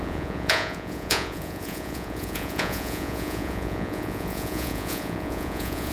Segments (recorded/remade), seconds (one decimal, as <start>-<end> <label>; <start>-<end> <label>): 0.0-5.9 remade